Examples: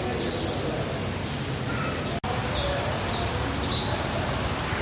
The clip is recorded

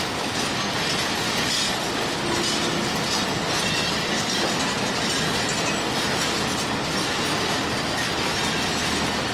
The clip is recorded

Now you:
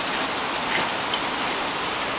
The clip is remade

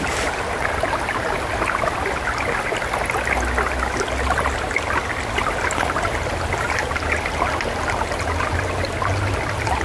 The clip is recorded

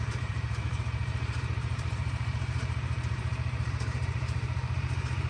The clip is remade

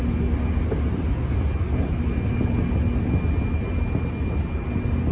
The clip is recorded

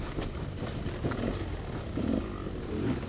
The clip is recorded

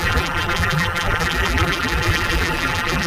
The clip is remade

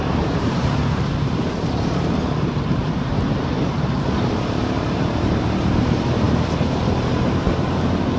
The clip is remade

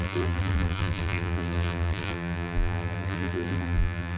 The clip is remade